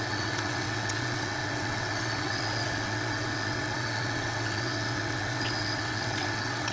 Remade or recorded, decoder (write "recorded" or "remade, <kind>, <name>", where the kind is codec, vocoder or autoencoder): remade, vocoder, WaveNeXt